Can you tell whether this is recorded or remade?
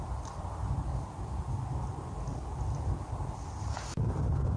recorded